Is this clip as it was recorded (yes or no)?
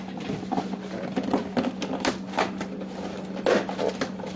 yes